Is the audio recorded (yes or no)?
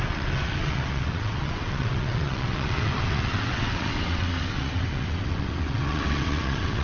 no